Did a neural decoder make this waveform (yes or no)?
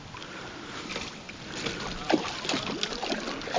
yes